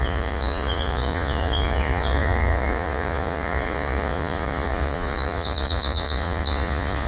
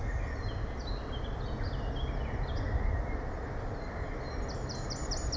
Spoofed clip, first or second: first